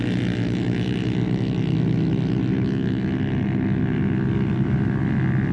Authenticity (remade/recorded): recorded